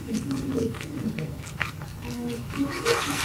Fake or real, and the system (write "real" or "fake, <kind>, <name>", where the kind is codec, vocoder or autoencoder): fake, codec, SNAC